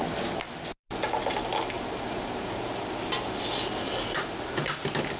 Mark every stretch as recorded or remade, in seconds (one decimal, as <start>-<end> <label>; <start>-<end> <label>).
0.0-5.2 recorded